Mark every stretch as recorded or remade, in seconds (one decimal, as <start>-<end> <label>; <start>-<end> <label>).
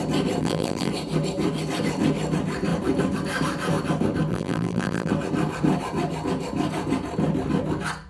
0.0-0.4 recorded; 0.4-0.9 remade; 0.9-4.3 recorded; 4.3-5.1 remade; 5.1-8.1 recorded